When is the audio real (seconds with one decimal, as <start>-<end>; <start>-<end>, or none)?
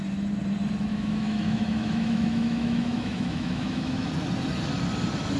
0.0-0.9; 4.1-5.4